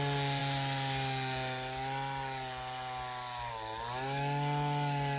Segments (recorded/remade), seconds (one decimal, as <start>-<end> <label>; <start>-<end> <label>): 0.0-5.2 recorded